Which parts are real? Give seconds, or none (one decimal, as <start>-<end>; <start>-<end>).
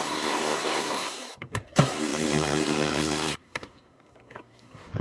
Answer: none